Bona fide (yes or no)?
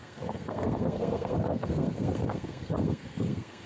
no